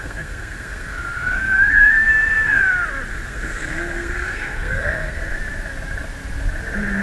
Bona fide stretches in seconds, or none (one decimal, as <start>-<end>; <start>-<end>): 2.6-3.1; 5.4-7.0